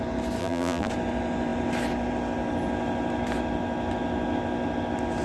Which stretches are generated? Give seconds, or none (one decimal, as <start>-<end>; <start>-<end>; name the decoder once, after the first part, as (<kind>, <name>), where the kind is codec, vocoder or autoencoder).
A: 0.4-0.9 (vocoder, BigVGAN v2)